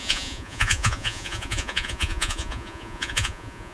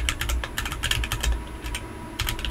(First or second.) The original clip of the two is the second